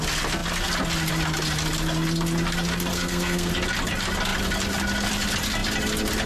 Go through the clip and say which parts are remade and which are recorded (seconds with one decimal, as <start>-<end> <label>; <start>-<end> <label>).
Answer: 0.0-2.9 recorded; 2.9-3.5 remade; 3.5-6.3 recorded